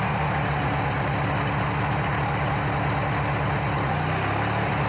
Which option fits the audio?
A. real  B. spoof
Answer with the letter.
A